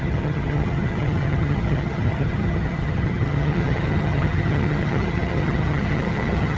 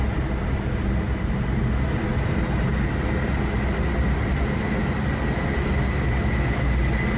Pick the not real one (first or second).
first